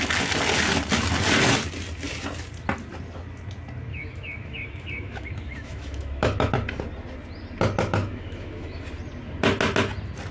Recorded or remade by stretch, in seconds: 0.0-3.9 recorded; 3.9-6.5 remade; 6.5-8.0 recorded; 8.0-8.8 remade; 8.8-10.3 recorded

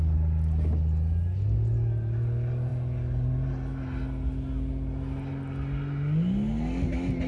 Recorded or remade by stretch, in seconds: 0.0-7.3 recorded

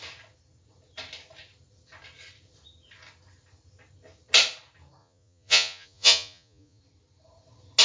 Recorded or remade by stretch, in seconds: 0.0-5.0 recorded; 5.0-6.8 remade; 6.8-7.8 recorded

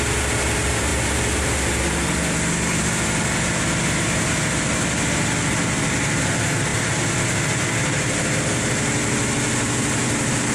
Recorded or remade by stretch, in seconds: 0.0-10.5 recorded